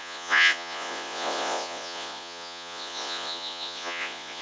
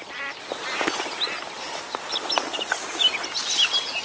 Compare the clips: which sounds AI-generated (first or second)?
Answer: first